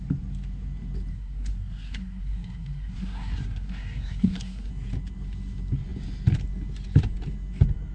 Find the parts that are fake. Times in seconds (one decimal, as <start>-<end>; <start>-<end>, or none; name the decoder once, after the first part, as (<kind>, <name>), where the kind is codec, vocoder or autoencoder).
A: 1.1-4.7 (codec, SNAC)